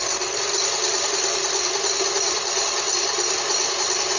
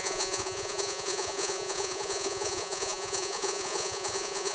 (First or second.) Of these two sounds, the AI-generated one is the second